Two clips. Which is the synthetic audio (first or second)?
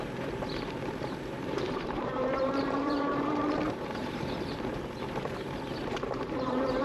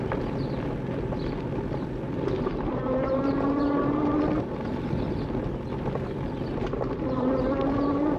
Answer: first